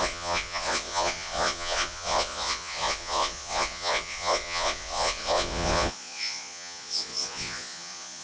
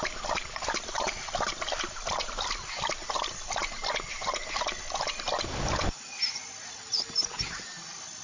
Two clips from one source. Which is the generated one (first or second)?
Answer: first